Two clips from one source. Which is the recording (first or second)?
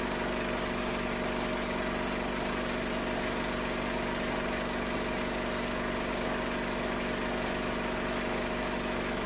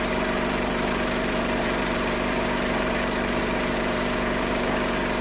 first